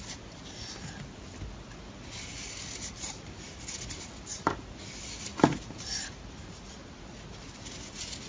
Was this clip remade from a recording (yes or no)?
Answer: no